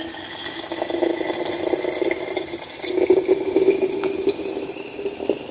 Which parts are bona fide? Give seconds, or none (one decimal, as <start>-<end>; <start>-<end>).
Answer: 0.0-5.5